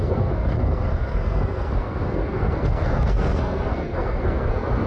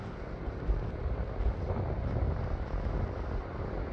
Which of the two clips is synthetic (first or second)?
first